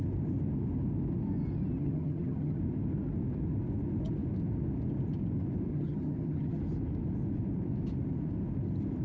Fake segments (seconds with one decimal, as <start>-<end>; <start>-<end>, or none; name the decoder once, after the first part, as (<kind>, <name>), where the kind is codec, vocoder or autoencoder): 1.8-2.6 (vocoder, HiFi-GAN); 5.7-6.6